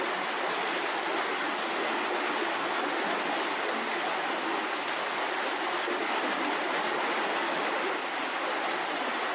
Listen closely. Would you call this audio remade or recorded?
recorded